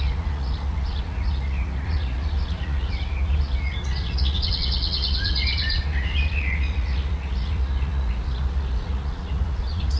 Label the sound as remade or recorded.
remade